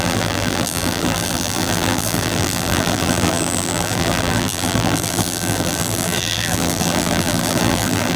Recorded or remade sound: remade